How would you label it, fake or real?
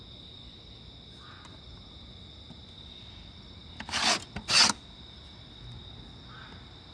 real